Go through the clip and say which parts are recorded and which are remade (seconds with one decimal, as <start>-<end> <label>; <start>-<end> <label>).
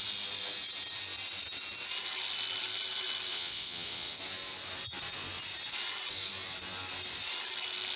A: 0.0-3.3 recorded; 3.3-4.2 remade; 4.2-8.0 recorded